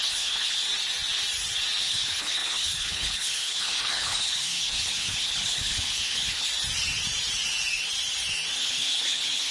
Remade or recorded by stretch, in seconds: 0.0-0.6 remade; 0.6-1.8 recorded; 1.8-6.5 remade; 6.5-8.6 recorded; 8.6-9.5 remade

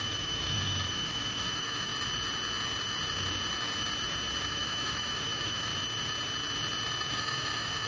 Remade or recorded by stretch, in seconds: 0.0-1.9 remade; 1.9-4.4 recorded; 4.4-5.7 remade; 5.7-7.1 recorded; 7.1-7.9 remade

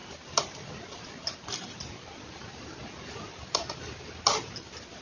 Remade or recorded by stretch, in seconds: 0.0-5.0 recorded

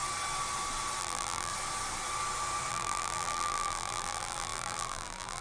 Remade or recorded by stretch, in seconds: 0.0-1.0 recorded; 1.0-1.5 remade; 1.5-2.7 recorded; 2.7-5.4 remade

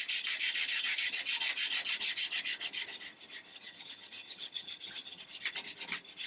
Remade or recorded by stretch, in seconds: 0.0-0.7 recorded; 0.7-1.2 remade; 1.2-3.5 recorded; 3.5-5.2 remade; 5.2-6.3 recorded

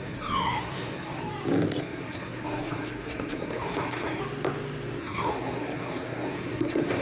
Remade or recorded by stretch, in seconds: 0.0-1.2 remade; 1.2-1.8 recorded; 1.8-4.2 remade; 4.2-5.0 recorded; 5.0-7.0 remade

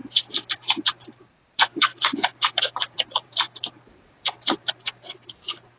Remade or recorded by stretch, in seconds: 0.0-0.5 recorded; 0.5-5.8 remade